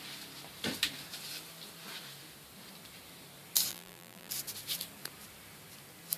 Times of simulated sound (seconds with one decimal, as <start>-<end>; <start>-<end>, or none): 3.7-4.3